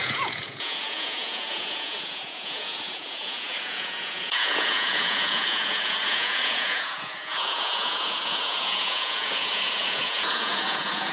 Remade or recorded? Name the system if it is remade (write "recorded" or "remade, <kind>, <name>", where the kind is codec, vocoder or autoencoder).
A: remade, vocoder, Vocos